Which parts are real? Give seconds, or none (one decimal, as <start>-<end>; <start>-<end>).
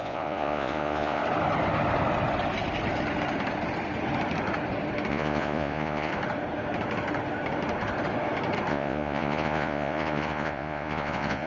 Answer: 1.2-5.1; 6.1-8.7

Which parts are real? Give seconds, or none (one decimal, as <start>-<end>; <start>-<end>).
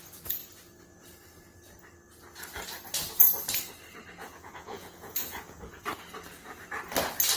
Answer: 0.0-4.2; 5.6-7.4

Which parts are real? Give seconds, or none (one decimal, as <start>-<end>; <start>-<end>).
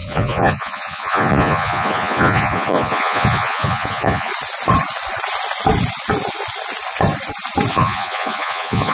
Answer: 4.3-7.7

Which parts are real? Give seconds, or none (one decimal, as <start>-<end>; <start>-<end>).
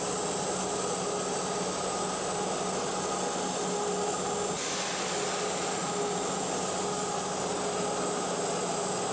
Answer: 0.0-9.1